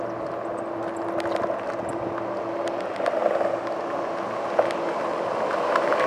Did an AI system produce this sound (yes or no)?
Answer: no